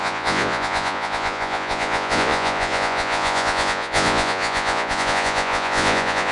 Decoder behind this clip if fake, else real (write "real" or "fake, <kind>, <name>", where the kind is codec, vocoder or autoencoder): fake, vocoder, Vocos